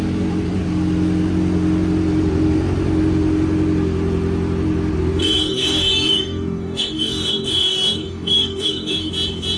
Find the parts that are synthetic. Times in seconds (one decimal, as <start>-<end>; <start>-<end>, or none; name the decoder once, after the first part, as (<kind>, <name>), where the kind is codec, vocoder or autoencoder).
5.2-9.1 (codec, DAC)